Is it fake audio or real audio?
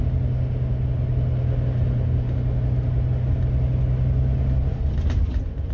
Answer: real